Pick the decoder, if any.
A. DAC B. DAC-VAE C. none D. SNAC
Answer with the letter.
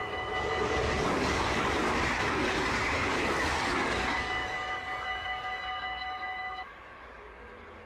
A